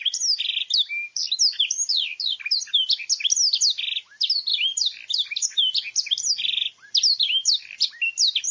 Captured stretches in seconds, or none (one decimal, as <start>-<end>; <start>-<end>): 0.0-8.5

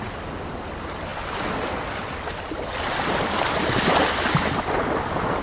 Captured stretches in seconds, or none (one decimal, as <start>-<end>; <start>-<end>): 0.0-5.4

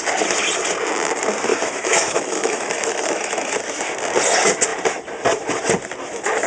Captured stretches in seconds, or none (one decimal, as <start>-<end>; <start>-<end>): 0.0-1.5; 3.5-6.5

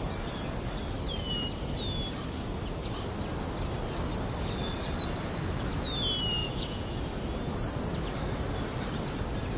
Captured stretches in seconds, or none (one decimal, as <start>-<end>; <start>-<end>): 0.0-6.4; 7.0-9.6

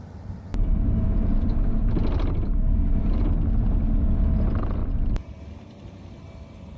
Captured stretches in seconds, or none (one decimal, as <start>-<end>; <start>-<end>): 0.0-0.5; 3.2-4.8; 5.4-6.8

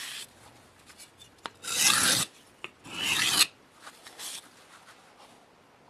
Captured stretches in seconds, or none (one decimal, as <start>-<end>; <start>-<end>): 0.0-5.9

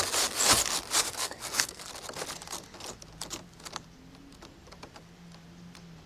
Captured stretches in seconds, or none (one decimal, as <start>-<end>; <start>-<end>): 0.0-1.0; 1.9-6.1

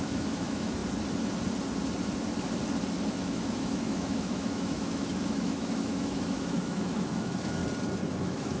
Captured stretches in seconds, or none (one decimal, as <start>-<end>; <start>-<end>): 0.8-3.1; 7.6-8.2